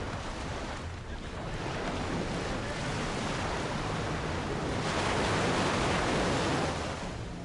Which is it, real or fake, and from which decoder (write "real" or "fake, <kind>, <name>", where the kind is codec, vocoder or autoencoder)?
real